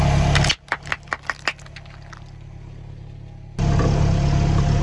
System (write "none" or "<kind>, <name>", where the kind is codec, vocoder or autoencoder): none